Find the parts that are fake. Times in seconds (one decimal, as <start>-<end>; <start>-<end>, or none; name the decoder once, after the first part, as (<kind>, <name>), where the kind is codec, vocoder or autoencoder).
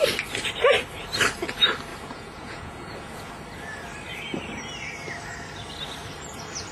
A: 1.9-3.3 (vocoder, Vocos)